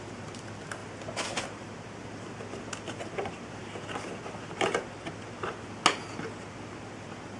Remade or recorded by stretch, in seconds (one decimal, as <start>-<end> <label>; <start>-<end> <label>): 0.0-7.4 recorded